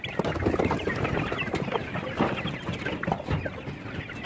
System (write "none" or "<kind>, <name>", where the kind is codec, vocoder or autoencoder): none